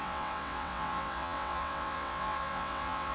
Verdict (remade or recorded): remade